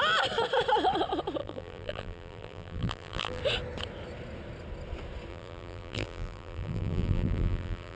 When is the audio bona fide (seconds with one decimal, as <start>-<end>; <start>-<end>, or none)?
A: 0.0-1.4; 3.4-5.3